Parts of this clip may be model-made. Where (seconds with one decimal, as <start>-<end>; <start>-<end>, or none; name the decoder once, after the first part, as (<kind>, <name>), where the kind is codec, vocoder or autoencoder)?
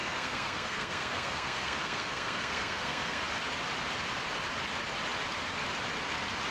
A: 0.0-3.2 (codec, SNAC)